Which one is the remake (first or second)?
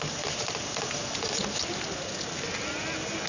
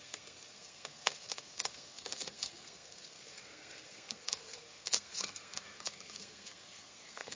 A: second